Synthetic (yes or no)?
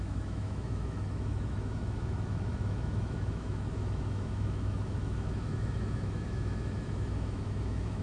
yes